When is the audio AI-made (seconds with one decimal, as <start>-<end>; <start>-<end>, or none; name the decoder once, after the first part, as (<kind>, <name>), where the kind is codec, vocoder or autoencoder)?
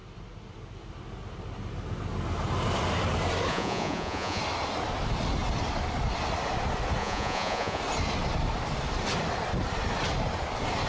3.5-4.4 (vocoder, Vocos); 7.0-7.8